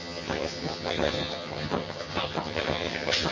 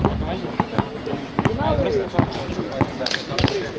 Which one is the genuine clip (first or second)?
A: second